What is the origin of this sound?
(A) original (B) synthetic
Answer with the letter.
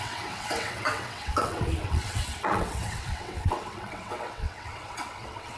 B